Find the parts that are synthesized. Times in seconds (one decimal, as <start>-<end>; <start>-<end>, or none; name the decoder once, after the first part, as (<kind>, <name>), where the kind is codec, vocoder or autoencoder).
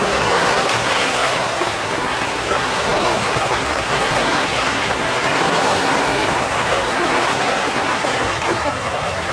0.0-9.3 (codec, SNAC)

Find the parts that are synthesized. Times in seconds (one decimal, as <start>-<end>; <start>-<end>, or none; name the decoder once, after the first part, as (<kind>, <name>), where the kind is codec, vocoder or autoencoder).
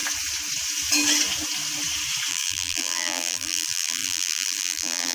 2.3-5.1 (vocoder, BigVGAN v2)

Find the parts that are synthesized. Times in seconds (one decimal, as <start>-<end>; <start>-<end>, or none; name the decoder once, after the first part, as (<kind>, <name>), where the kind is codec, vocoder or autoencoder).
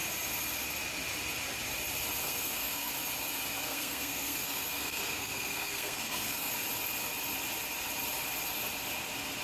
2.2-2.9 (codec, SNAC); 3.6-6.5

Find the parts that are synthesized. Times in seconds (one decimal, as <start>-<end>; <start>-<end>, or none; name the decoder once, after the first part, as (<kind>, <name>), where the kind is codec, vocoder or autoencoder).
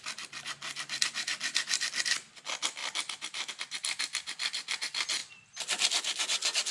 2.8-3.5 (vocoder, BigVGAN v2)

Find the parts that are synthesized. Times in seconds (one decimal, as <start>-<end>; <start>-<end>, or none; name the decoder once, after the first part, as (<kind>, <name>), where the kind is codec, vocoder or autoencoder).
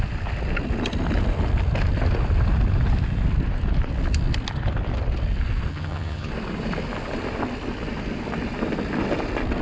5.7-6.3 (vocoder, HiFi-GAN)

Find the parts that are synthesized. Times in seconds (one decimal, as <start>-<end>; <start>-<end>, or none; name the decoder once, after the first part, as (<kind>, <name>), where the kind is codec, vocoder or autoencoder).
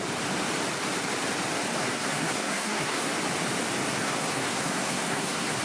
1.8-3.1 (codec, SNAC); 3.9-5.6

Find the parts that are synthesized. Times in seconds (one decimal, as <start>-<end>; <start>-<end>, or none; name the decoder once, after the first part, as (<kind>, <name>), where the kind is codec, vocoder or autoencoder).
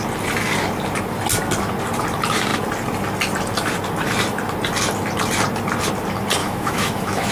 6.4-7.3 (autoencoder, DAC-VAE)